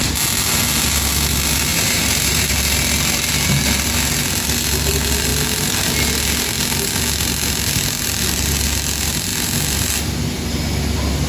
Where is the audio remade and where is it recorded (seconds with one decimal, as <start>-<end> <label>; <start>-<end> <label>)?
0.0-1.7 recorded; 1.7-2.5 remade; 2.5-11.3 recorded